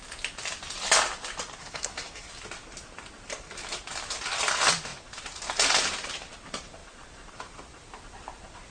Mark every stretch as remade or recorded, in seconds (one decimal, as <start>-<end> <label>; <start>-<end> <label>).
0.0-1.6 recorded; 1.6-2.3 remade; 2.3-8.7 recorded